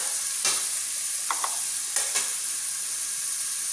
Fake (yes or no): no